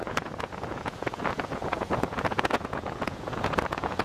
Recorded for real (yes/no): no